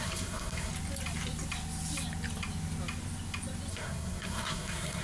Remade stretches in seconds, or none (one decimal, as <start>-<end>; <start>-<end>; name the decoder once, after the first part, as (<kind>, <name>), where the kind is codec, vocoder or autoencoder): 0.0-0.7 (codec, SNAC); 3.7-5.0